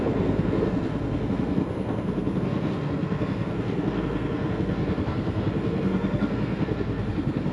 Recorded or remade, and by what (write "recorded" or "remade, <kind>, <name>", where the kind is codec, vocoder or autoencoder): remade, codec, SNAC